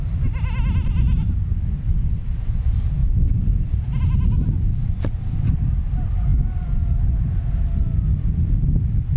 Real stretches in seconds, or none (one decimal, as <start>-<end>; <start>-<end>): 0.0-1.8; 2.6-4.8; 5.6-9.2